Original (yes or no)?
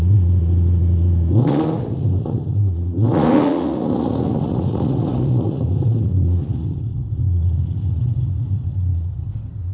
no